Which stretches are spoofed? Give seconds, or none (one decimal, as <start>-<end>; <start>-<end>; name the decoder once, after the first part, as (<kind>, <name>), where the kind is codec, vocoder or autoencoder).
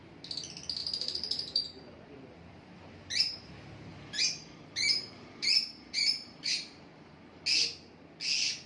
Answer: 0.8-3.5 (vocoder, BigVGAN v2); 3.9-7.4